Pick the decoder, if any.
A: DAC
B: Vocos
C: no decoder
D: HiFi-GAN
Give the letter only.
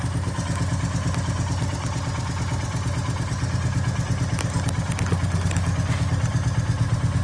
C